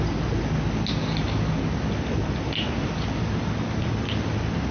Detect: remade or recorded recorded